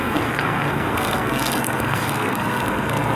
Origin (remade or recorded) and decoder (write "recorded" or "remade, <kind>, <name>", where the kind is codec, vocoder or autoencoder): remade, codec, SNAC